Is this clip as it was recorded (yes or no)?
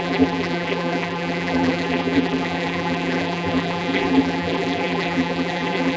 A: no